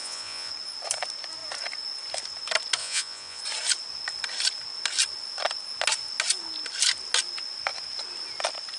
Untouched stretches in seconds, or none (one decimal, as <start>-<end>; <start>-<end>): 0.5-2.8; 3.4-8.8